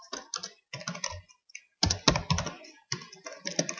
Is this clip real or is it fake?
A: real